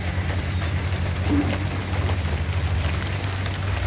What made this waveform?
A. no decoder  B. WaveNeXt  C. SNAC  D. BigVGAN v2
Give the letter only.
A